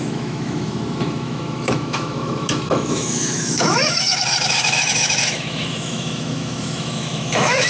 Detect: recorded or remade remade